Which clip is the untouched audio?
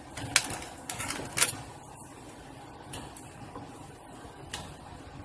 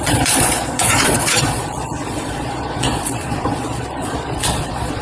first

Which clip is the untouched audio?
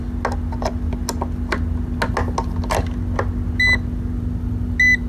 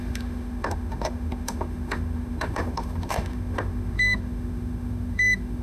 first